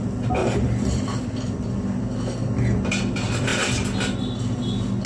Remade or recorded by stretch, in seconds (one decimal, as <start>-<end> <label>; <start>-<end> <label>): 0.0-0.4 recorded; 0.4-2.0 remade; 2.0-5.1 recorded